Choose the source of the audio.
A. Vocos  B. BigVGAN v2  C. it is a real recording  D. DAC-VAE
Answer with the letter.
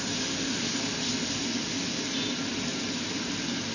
C